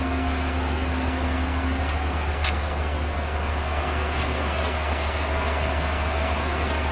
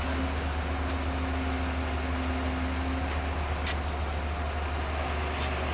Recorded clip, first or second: second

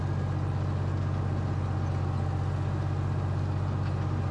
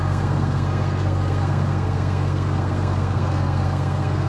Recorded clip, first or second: first